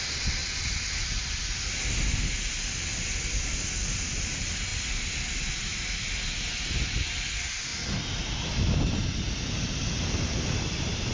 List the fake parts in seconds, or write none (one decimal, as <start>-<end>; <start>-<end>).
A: none